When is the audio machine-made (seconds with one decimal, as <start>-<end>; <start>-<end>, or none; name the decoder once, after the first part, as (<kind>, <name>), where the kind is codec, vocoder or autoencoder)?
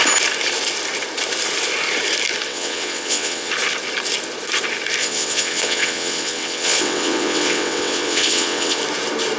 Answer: 2.5-3.5 (vocoder, WaveNeXt); 5.0-8.8